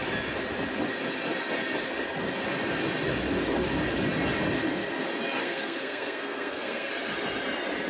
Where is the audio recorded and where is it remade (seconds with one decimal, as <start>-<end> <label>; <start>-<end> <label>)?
0.0-5.4 recorded; 5.4-6.9 remade; 6.9-7.9 recorded